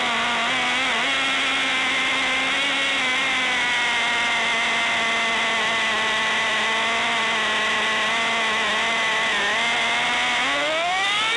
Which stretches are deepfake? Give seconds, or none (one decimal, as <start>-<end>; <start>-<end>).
none